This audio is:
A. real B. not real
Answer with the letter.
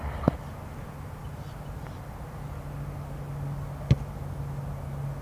A